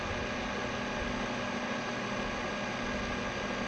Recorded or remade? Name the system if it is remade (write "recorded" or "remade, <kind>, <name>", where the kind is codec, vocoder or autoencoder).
recorded